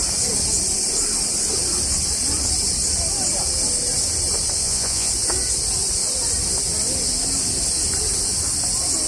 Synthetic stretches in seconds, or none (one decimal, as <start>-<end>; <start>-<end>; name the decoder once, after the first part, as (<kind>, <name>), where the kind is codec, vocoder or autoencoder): 4.6-5.1 (vocoder, Vocos)

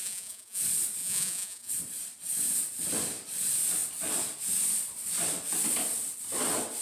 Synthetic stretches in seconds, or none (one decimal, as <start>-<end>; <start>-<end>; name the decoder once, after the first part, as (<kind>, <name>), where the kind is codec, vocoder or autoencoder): 0.0-0.6 (vocoder, Vocos); 1.0-1.7

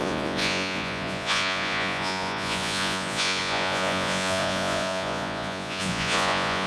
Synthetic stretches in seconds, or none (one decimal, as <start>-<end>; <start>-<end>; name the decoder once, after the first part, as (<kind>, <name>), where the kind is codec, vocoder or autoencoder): 0.0-6.7 (vocoder, Vocos)

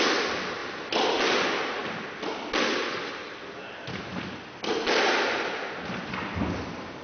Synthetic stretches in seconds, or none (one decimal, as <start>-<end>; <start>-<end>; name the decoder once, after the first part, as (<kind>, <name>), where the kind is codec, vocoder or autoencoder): none

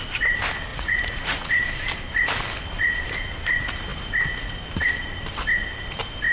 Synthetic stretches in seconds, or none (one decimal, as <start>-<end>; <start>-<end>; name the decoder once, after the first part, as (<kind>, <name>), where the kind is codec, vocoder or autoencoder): 0.7-1.5 (vocoder, Vocos)

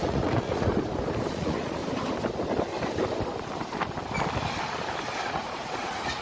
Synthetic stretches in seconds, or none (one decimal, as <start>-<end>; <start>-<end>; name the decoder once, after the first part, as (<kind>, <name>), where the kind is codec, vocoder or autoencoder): 0.0-0.7 (vocoder, Vocos); 1.3-1.8; 5.3-6.2

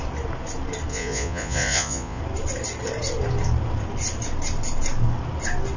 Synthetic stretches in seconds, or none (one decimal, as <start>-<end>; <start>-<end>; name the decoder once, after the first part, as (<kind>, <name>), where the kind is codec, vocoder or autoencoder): 0.9-2.2 (vocoder, Vocos)